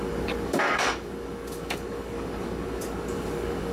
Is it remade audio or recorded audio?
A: remade